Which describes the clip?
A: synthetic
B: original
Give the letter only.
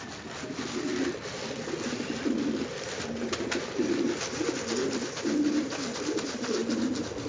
B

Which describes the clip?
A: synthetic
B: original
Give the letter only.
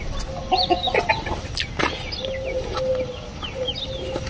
B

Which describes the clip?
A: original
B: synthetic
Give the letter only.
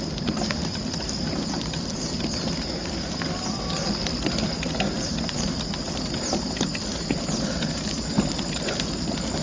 A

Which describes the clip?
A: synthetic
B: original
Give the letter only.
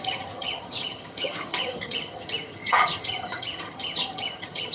A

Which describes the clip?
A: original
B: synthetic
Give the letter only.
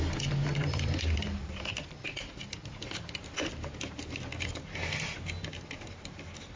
A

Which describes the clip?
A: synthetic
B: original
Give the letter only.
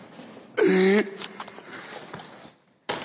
B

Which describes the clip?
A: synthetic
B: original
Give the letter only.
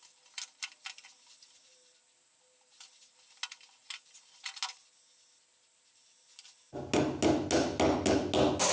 B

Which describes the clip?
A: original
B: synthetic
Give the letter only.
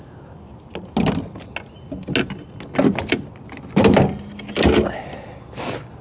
A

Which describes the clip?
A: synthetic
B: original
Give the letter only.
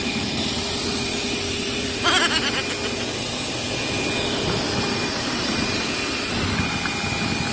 B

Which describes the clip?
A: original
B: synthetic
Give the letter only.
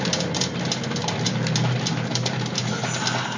A